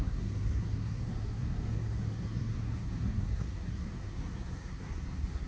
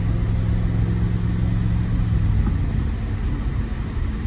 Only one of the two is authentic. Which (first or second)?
second